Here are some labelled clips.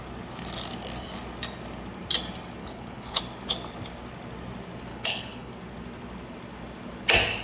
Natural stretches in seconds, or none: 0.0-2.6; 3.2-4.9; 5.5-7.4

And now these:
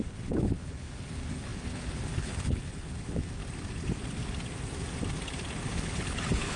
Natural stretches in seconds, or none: 3.4-5.7